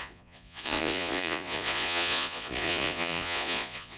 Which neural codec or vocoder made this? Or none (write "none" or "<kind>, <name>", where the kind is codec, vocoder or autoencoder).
vocoder, Vocos